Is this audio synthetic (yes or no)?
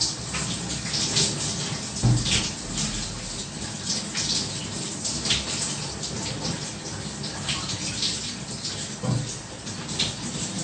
no